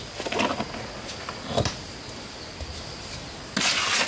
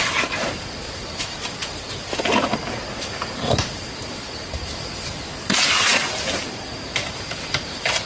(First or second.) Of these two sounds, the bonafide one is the first